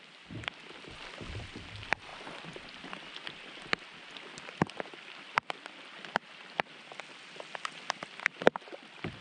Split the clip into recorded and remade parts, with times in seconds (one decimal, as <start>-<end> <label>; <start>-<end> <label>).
0.0-9.2 recorded